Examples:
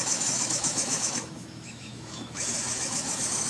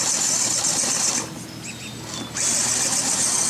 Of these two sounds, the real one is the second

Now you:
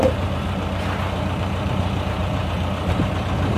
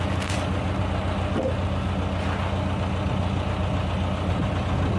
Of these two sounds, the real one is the second